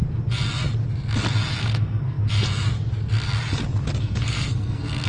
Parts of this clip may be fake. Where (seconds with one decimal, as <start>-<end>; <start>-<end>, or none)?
1.6-2.2; 4.0-5.1